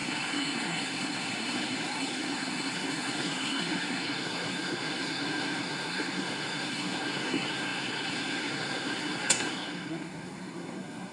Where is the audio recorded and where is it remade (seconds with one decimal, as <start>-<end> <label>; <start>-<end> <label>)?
0.0-11.1 remade